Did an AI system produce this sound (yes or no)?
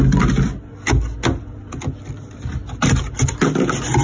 no